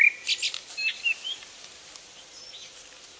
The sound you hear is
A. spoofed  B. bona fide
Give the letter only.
B